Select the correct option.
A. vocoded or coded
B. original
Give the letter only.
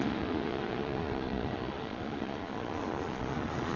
A